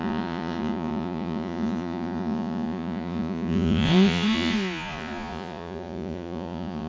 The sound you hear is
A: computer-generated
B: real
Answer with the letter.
A